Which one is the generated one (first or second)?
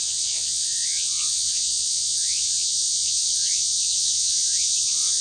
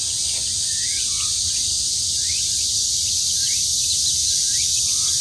first